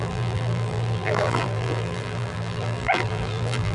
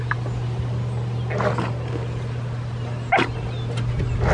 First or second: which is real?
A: second